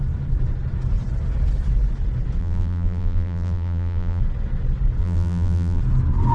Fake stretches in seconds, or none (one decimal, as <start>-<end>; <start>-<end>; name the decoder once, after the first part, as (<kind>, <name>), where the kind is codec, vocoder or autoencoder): 2.4-4.2 (vocoder, BigVGAN v2); 5.0-5.8